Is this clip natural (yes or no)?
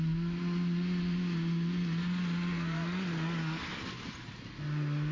yes